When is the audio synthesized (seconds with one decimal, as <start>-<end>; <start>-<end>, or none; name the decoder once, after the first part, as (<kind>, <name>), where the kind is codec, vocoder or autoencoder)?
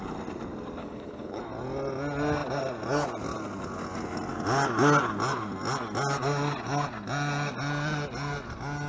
0.8-1.4 (codec, HILCodec)